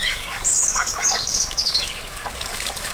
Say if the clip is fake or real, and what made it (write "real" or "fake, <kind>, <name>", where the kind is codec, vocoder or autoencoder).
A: fake, codec, DAC